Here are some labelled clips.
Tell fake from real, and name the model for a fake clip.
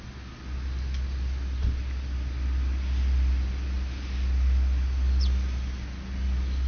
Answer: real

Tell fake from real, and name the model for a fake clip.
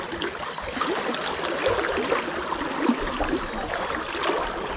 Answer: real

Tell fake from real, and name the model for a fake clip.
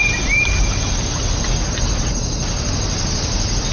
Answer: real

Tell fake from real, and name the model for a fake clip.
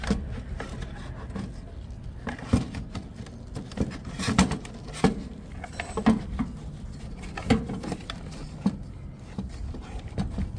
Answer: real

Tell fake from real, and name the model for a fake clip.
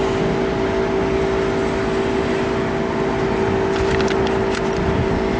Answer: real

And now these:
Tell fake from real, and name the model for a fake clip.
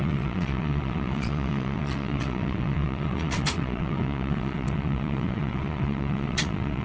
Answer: fake, vocoder, WaveNeXt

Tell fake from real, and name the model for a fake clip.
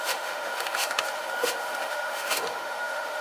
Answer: fake, autoencoder, DAC-VAE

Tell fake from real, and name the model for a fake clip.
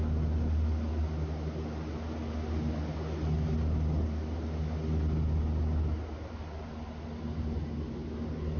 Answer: real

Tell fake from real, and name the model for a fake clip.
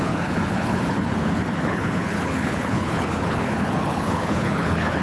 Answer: fake, codec, HILCodec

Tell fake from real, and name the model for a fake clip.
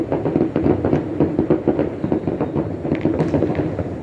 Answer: real